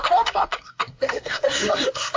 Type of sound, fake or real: fake